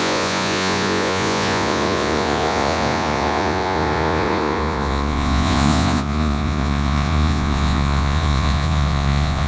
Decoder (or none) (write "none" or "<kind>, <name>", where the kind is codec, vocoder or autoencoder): vocoder, Vocos